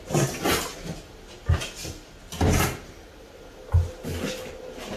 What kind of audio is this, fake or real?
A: real